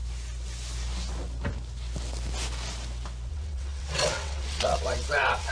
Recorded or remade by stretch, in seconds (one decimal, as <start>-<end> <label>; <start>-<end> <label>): 0.0-3.3 recorded; 3.3-5.5 remade